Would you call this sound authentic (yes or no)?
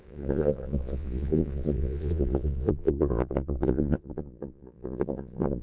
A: no